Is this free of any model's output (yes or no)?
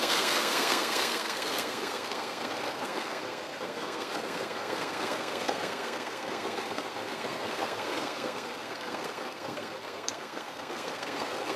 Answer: no